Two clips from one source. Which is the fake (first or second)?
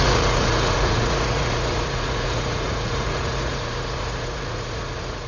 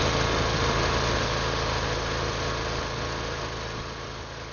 first